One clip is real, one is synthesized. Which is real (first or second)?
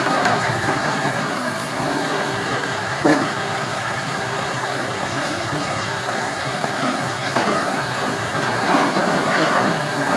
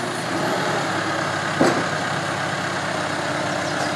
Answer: second